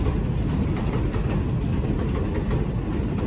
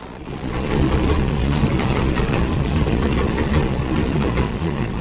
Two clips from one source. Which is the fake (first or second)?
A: second